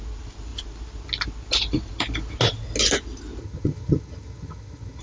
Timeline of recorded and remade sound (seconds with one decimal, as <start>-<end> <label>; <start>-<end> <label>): 0.0-3.4 recorded; 3.4-5.0 remade